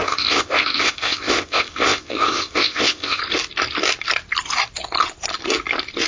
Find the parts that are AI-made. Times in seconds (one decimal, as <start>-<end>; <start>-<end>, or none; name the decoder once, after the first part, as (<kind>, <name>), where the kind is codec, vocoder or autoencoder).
0.0-3.2 (codec, ZipCodec)